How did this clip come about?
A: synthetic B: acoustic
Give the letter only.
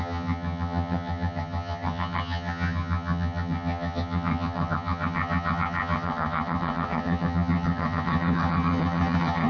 A